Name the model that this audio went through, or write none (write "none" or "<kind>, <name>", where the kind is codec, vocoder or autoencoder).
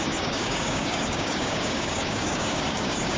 codec, DAC